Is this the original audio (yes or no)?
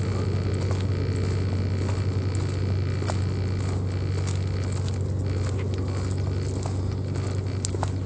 yes